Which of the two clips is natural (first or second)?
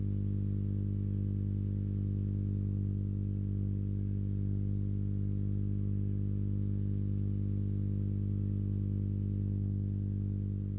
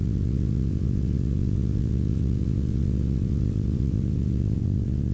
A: first